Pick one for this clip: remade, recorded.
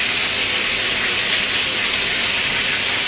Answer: recorded